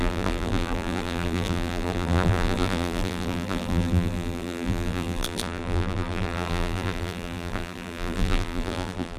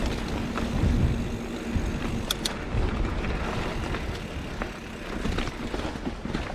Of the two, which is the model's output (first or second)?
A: first